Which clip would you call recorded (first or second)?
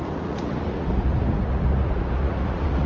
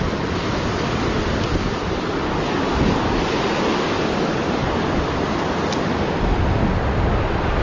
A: second